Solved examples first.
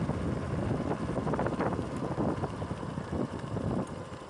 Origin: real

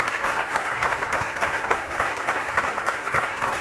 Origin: fake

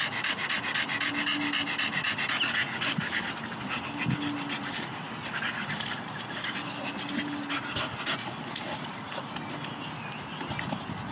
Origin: real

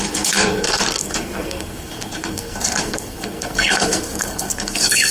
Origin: fake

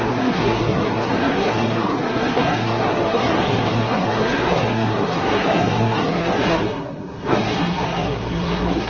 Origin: fake